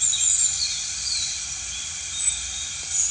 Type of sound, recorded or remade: recorded